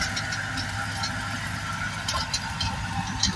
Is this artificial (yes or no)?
no